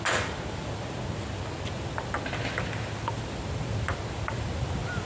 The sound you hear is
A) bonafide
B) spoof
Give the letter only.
A